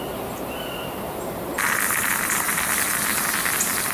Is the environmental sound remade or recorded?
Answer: recorded